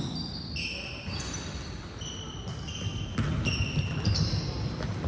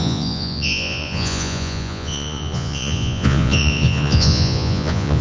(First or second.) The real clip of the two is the first